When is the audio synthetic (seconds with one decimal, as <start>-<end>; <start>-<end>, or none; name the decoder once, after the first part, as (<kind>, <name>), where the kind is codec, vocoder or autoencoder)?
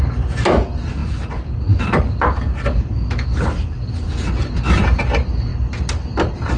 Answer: none